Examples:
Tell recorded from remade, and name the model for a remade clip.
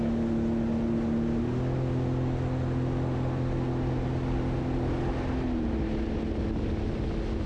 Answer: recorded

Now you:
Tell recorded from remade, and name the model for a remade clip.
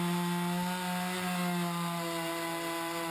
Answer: recorded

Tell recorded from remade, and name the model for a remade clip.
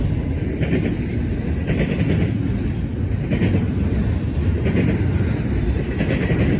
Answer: recorded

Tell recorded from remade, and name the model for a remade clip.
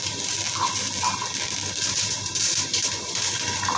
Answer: recorded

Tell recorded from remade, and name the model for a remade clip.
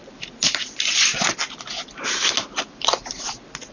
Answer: recorded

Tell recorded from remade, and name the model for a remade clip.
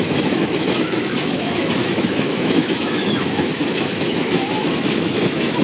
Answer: remade, autoencoder, DAC-VAE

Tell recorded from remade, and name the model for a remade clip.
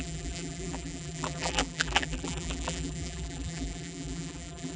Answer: remade, vocoder, BigVGAN v2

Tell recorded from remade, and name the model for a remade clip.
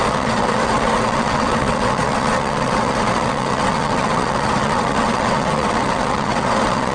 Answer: remade, vocoder, WaveNeXt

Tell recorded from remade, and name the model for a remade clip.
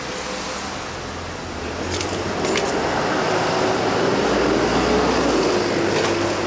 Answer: recorded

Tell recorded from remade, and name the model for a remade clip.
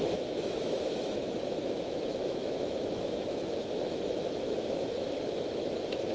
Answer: remade, autoencoder, DAC-VAE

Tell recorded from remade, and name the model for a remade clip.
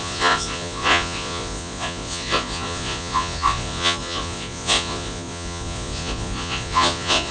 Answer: remade, vocoder, Vocos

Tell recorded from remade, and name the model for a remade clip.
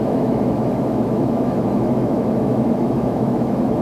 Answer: remade, autoencoder, DAC-VAE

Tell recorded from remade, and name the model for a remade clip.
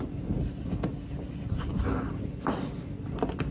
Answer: recorded